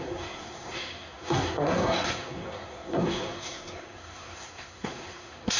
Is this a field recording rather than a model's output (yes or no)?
no